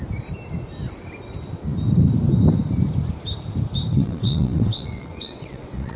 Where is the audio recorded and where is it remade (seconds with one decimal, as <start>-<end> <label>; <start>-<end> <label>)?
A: 0.0-3.9 recorded; 3.9-6.0 remade